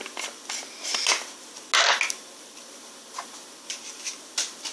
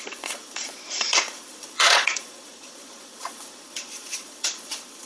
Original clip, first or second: first